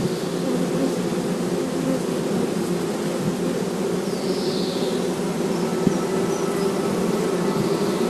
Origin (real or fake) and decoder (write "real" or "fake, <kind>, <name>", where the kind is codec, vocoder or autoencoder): real